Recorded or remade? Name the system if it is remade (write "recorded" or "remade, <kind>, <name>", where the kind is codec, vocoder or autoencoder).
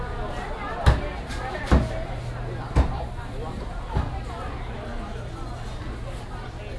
recorded